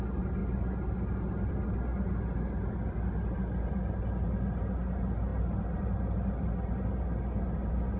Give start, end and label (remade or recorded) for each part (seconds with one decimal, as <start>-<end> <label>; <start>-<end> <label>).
0.0-8.0 recorded